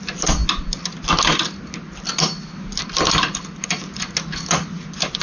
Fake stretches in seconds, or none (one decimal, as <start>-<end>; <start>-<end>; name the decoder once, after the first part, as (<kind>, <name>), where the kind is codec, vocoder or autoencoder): none